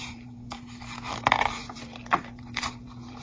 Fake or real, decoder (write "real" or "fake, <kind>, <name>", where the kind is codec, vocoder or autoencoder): fake, vocoder, BigVGAN v2